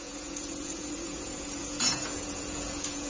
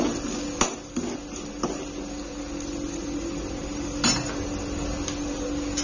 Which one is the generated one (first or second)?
first